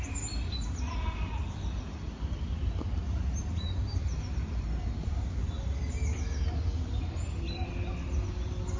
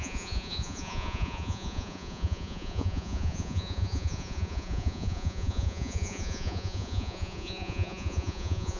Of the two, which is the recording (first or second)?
first